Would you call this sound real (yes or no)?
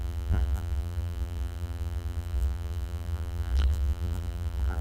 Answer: no